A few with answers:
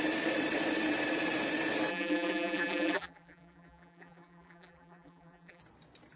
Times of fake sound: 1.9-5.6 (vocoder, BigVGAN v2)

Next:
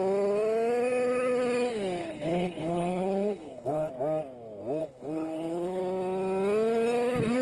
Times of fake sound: 2.0-3.9 (codec, HILCodec); 4.8-5.8

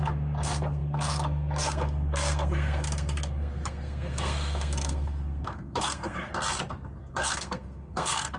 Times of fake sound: 0.0-6.3 (codec, SNAC); 7.0-8.4

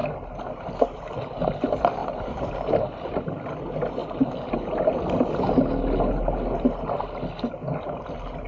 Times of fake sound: 2.0-2.7 (vocoder, BigVGAN v2); 4.0-5.2